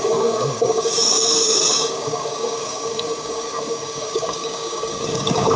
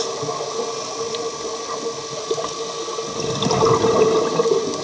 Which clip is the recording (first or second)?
second